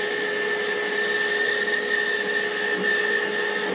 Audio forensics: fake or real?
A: real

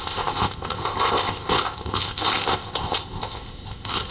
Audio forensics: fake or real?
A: fake